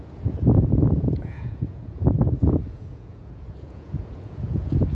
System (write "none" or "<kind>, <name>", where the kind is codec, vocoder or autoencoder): vocoder, Vocos